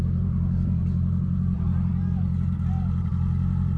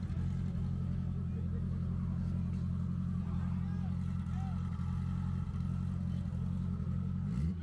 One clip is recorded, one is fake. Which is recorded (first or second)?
second